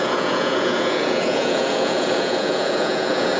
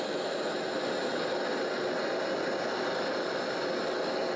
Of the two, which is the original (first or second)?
second